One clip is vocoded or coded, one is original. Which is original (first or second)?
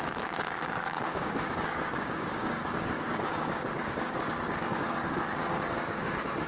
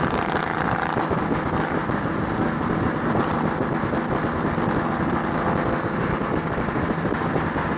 second